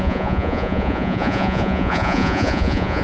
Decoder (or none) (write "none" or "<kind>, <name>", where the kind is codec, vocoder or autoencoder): vocoder, Vocos